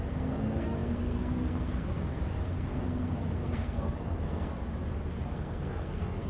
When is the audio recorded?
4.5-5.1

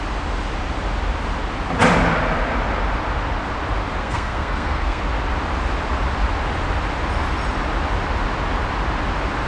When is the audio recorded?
0.0-4.0; 5.0-9.5

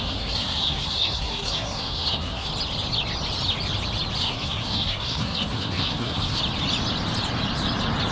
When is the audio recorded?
2.5-4.2; 6.4-8.1

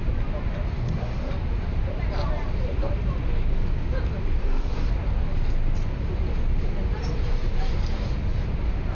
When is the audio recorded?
0.0-0.8; 1.3-4.4; 4.9-8.9

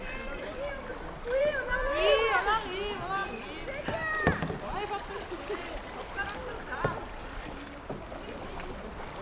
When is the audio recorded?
0.0-9.2

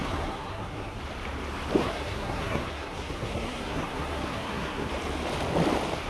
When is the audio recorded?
1.0-1.8; 4.9-6.1

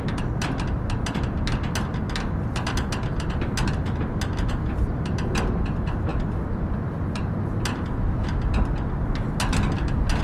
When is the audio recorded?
0.0-10.2

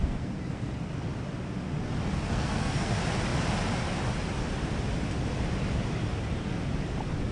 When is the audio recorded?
0.9-2.3; 2.9-7.3